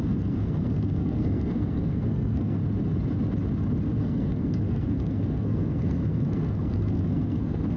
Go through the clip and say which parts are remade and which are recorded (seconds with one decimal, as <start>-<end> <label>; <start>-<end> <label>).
0.0-2.6 remade; 2.6-4.0 recorded; 4.0-7.8 remade